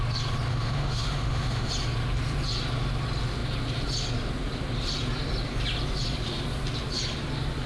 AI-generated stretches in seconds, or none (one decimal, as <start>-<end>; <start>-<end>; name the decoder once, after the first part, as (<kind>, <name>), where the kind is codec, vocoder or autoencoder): 0.5-1.7 (autoencoder, DAC-VAE)